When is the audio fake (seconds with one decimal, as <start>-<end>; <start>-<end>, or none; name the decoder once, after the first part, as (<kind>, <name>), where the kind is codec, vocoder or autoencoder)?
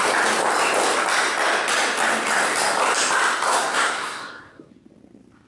3.5-4.7 (codec, SNAC)